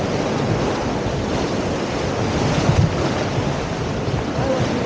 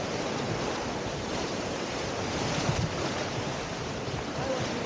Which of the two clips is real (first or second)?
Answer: first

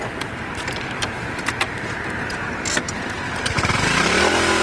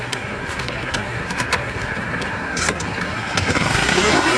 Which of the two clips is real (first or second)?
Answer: first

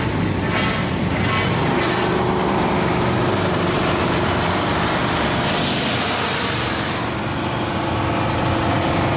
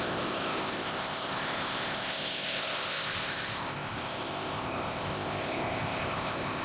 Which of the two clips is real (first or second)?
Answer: first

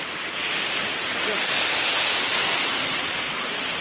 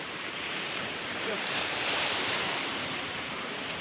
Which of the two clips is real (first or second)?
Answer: first